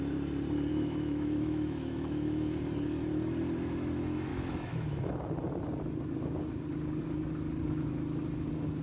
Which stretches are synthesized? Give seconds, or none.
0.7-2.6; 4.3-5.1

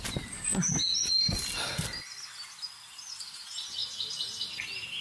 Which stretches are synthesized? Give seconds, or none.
none

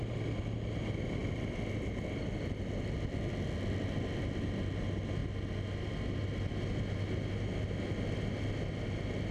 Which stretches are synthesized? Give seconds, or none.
none

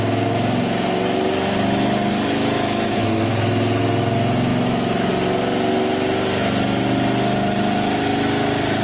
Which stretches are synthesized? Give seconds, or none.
2.4-3.3; 4.5-5.1

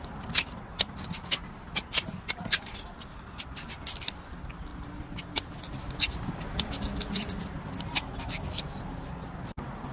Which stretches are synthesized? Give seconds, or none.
none

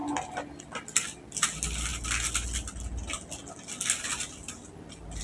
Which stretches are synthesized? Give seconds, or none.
none

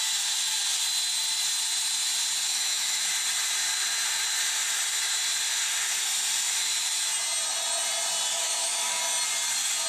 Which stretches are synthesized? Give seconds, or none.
2.5-3.1; 8.3-9.0